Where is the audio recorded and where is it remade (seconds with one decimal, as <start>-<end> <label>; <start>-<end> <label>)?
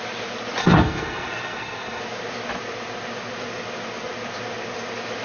0.0-0.6 recorded; 0.6-2.0 remade; 2.0-5.2 recorded